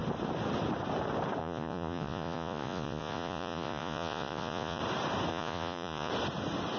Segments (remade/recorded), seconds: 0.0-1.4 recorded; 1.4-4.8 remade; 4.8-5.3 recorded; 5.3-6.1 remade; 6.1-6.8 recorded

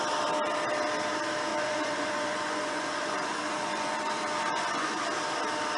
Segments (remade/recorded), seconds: 0.0-1.5 recorded; 1.5-5.0 remade; 5.0-5.8 recorded

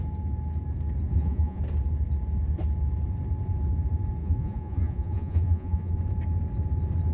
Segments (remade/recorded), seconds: 0.0-1.1 recorded; 1.1-1.6 remade; 1.6-4.2 recorded; 4.2-5.9 remade; 5.9-7.1 recorded

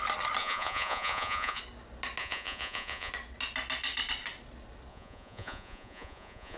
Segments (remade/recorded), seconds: 0.0-0.4 recorded; 0.4-1.6 remade; 1.6-2.2 recorded; 2.2-3.1 remade; 3.1-4.9 recorded; 4.9-6.6 remade

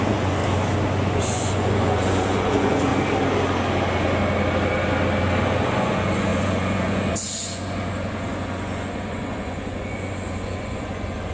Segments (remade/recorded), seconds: 0.0-0.4 remade; 0.4-1.2 recorded; 1.2-2.9 remade; 2.9-5.4 recorded; 5.4-11.3 remade

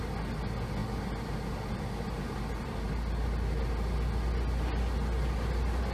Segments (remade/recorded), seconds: 0.0-5.9 recorded

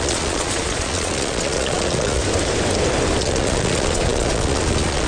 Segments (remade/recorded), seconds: 0.0-2.2 remade; 2.2-3.2 recorded; 3.2-5.1 remade